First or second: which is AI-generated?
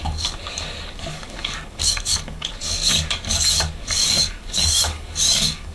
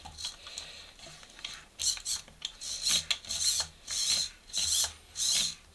first